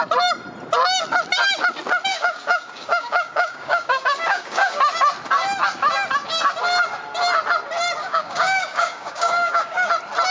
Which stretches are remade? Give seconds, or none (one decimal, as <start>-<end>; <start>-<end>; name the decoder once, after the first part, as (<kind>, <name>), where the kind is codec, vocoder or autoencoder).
2.1-4.8 (codec, DAC); 8.0-9.9